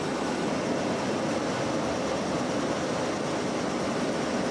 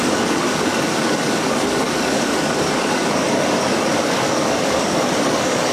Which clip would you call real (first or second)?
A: first